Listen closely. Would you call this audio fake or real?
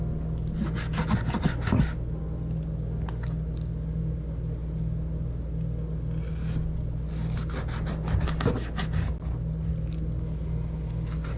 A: real